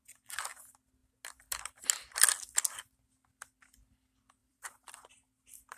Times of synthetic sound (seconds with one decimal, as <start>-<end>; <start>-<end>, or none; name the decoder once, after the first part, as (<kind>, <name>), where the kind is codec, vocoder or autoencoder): 4.4-4.9 (vocoder, BigVGAN v2)